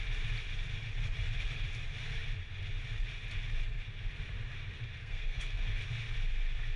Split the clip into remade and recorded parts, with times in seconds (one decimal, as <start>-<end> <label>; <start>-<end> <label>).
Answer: 0.0-5.0 recorded; 5.0-5.8 remade; 5.8-6.8 recorded